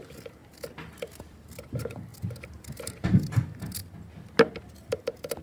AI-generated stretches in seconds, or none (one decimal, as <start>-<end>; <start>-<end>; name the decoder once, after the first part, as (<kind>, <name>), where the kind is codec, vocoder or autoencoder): 0.0-0.4 (vocoder, BigVGAN v2); 1.1-3.8; 4.8-5.4